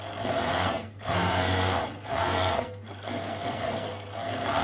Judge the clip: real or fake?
fake